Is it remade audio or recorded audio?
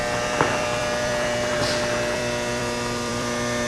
remade